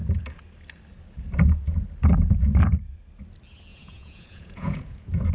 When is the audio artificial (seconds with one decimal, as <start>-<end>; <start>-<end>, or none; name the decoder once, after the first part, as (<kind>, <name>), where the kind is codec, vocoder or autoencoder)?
3.7-5.3 (vocoder, Vocos)